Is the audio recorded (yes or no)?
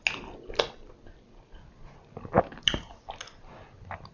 yes